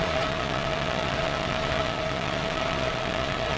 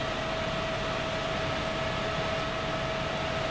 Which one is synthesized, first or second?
first